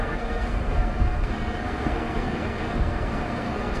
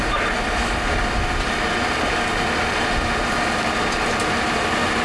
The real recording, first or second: second